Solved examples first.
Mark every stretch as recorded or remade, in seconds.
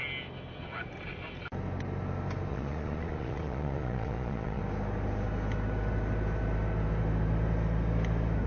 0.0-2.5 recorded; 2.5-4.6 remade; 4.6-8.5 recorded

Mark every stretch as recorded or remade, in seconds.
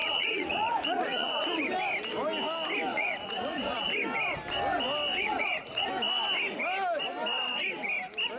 0.0-1.6 remade; 1.6-2.9 recorded; 2.9-3.9 remade; 3.9-5.1 recorded; 5.1-5.9 remade; 5.9-8.4 recorded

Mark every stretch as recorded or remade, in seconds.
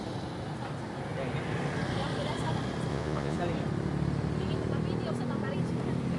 0.0-2.9 recorded; 2.9-3.4 remade; 3.4-6.2 recorded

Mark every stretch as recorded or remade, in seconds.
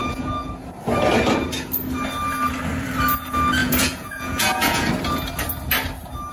0.0-0.5 remade; 0.5-3.6 recorded; 3.6-4.9 remade; 4.9-6.3 recorded